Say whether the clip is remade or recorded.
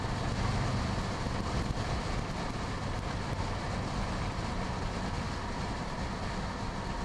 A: recorded